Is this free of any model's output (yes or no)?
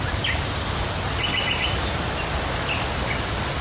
yes